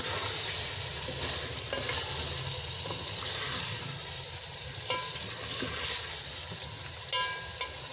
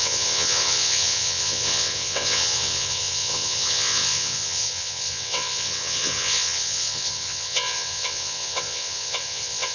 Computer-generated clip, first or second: second